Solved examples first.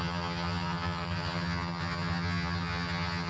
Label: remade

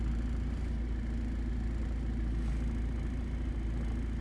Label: recorded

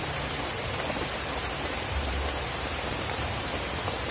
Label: remade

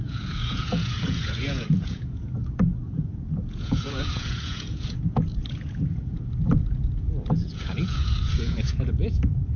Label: remade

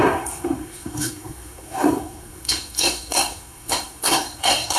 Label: remade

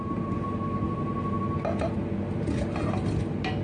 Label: recorded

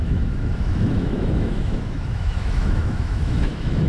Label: remade